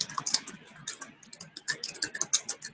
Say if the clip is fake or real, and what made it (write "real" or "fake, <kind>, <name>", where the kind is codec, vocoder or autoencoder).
real